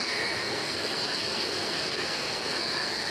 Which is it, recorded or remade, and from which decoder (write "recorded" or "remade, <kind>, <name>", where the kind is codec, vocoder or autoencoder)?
remade, codec, SNAC